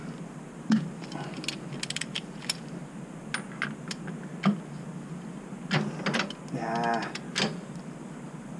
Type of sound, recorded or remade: recorded